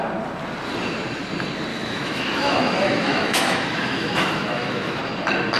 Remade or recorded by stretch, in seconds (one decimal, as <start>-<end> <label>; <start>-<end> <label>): 0.0-1.7 recorded; 1.7-5.0 remade; 5.0-5.6 recorded